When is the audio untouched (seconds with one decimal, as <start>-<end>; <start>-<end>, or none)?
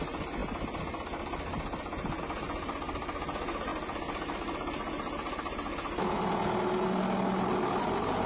0.0-8.3